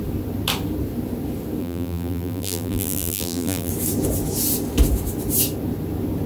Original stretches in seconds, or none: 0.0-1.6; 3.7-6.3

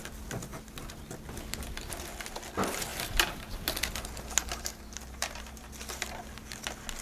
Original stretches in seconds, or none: 0.0-2.9; 3.6-4.4; 5.7-7.0

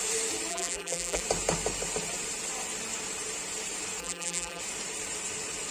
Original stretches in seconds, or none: 0.0-0.5; 1.2-4.0; 4.6-5.7

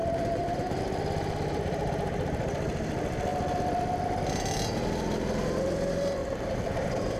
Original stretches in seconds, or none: 0.8-6.2

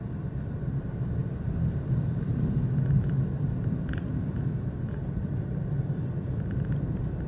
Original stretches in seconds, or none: none

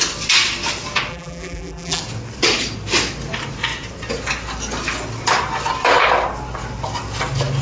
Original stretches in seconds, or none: 0.0-1.1; 2.0-7.6

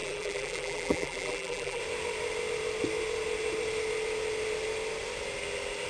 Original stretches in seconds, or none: 1.8-5.9